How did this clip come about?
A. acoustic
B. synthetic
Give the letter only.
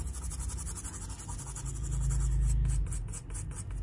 A